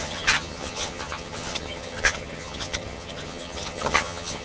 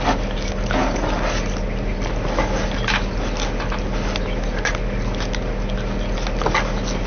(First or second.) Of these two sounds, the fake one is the first